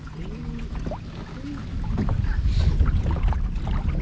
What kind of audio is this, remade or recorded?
recorded